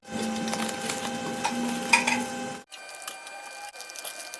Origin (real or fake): real